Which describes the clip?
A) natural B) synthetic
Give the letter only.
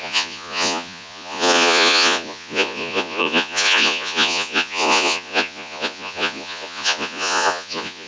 B